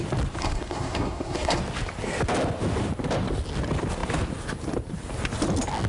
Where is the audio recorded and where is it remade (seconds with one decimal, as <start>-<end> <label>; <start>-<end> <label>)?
0.0-0.4 recorded; 0.4-1.6 remade; 1.6-5.9 recorded